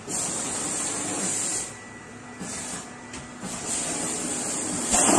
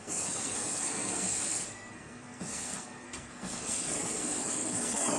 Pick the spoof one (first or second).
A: second